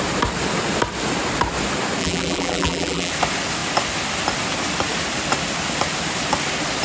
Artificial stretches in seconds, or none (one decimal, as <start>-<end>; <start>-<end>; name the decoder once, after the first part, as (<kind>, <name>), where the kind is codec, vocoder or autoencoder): 2.0-3.1 (vocoder, BigVGAN v2)